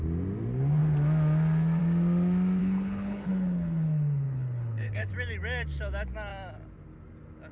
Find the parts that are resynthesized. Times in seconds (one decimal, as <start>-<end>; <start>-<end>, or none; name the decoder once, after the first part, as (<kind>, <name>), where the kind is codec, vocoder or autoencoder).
2.6-5.1 (codec, HILCodec)